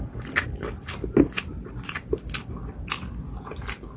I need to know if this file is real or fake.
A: real